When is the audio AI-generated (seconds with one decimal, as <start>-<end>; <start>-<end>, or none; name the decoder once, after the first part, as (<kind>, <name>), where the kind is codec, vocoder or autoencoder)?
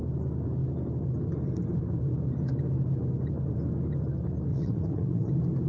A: 4.5-5.3 (vocoder, Vocos)